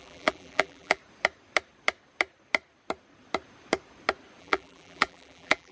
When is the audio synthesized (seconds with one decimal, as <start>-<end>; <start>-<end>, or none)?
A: 0.0-1.0; 4.4-5.7